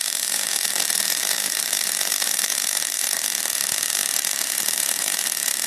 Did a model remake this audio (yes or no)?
yes